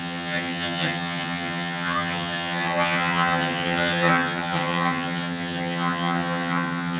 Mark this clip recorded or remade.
remade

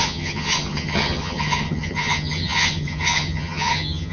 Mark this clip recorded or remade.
remade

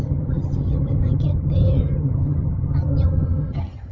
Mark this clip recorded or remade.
remade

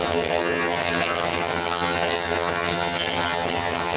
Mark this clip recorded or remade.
remade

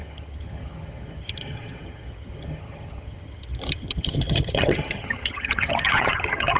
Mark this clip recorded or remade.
remade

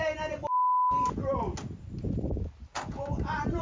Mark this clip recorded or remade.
recorded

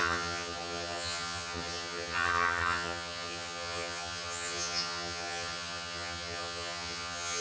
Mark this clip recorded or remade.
remade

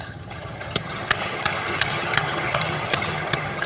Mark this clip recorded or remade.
remade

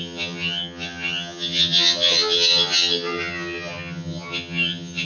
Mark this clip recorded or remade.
remade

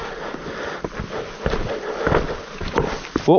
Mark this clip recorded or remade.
recorded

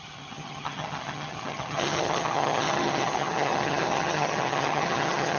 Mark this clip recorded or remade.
remade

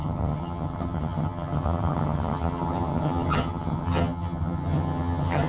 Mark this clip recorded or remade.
remade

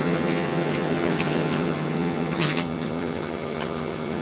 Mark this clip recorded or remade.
remade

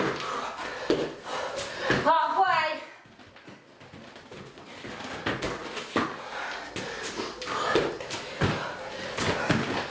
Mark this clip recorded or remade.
recorded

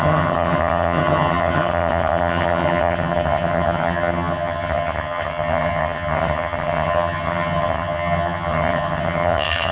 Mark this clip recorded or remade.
remade